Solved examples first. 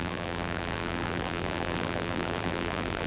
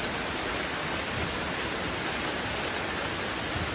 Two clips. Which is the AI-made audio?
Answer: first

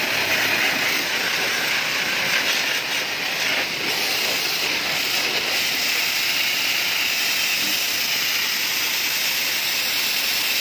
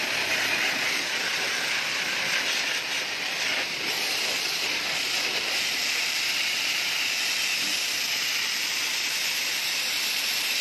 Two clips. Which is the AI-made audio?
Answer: second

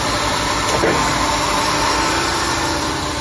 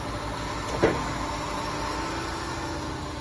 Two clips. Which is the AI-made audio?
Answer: first